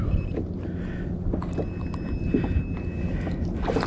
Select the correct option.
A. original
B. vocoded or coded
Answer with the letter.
A